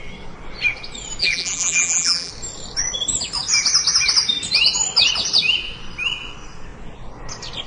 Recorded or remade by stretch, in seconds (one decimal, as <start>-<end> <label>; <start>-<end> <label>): 0.0-1.2 recorded; 1.2-2.3 remade; 2.3-7.7 recorded